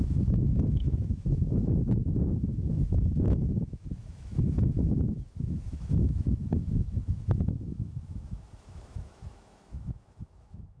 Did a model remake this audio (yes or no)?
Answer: yes